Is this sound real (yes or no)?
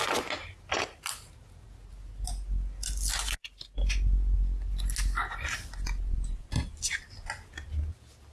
yes